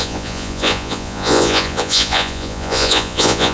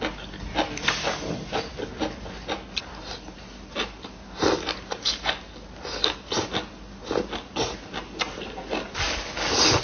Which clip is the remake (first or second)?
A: first